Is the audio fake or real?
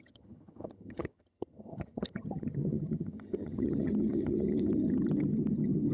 fake